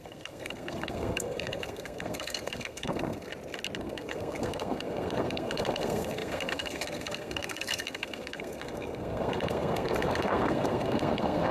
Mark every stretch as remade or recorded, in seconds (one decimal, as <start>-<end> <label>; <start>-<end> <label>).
0.0-3.3 remade; 3.3-3.8 recorded; 3.8-11.5 remade